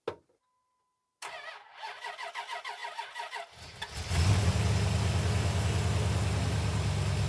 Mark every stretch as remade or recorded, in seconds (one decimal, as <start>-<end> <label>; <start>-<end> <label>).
0.0-7.3 recorded